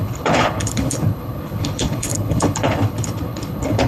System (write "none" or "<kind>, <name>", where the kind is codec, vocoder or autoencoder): codec, HILCodec